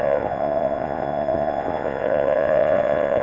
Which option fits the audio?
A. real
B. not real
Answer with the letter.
B